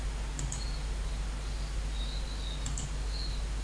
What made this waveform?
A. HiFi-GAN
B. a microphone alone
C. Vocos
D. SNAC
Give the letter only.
B